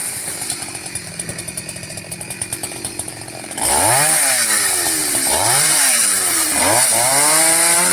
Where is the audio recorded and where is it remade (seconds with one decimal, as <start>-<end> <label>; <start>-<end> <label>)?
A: 0.0-3.7 remade; 3.7-5.0 recorded; 5.0-6.6 remade; 6.6-7.9 recorded